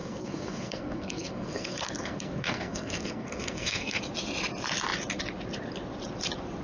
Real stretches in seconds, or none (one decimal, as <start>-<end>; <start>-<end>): 4.0-6.6